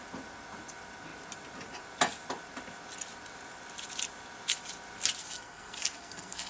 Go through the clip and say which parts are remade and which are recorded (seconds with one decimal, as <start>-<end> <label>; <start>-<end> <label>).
0.0-5.2 recorded; 5.2-6.5 remade